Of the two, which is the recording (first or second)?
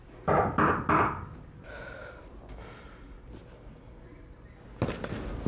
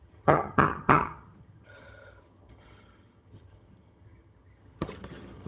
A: first